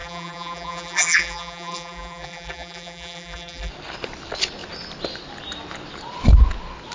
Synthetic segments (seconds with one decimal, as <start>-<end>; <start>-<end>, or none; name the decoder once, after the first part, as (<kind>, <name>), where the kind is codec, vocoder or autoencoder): 0.0-3.7 (vocoder, BigVGAN v2)